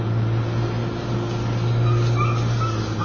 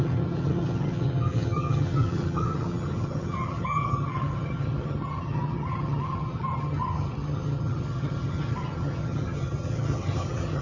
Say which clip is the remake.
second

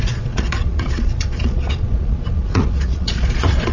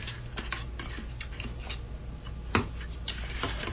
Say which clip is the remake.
first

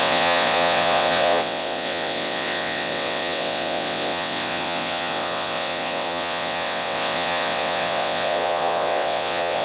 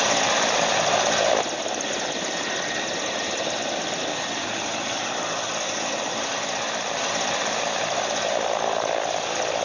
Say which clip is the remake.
first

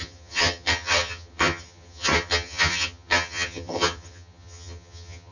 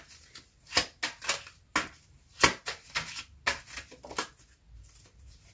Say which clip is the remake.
first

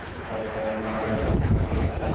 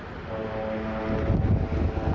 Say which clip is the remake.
first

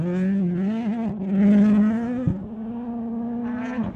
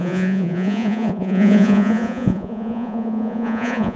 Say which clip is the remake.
second